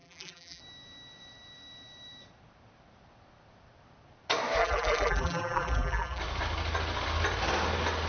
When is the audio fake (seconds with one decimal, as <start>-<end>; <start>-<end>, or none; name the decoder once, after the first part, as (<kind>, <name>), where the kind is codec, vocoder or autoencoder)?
0.0-0.6 (vocoder, BigVGAN v2); 4.6-6.2